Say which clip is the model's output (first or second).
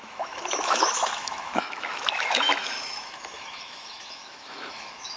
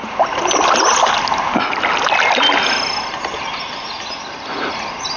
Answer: first